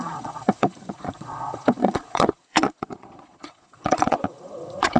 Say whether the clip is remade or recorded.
remade